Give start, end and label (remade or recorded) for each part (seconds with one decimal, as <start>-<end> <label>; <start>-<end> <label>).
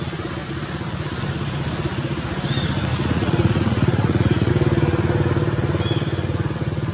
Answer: 0.0-2.9 recorded; 2.9-4.5 remade; 4.5-6.9 recorded